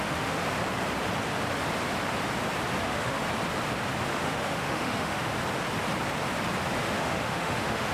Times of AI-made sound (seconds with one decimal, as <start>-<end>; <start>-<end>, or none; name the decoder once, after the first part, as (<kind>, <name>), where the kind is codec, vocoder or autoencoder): 0.0-0.4 (autoencoder, DAC-VAE); 2.8-3.2; 4.1-5.3; 6.8-7.9